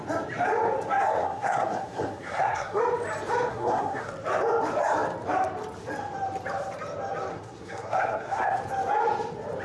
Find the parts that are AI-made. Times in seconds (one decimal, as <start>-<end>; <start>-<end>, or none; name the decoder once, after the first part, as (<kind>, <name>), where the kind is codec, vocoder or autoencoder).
1.2-2.8 (codec, SNAC); 3.5-4.1; 7.3-8.6